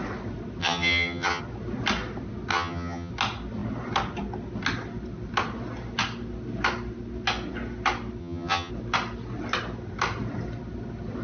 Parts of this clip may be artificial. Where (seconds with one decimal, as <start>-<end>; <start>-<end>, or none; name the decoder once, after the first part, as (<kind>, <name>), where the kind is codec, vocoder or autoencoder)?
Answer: 0.6-1.4 (vocoder, HiFi-GAN); 2.5-3.1; 8.2-8.7